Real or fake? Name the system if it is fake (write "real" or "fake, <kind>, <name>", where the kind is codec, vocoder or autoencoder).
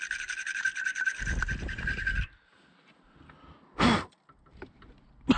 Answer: real